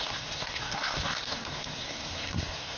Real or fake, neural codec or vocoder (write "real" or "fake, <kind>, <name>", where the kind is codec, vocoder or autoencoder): fake, codec, SNAC